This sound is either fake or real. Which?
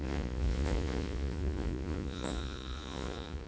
fake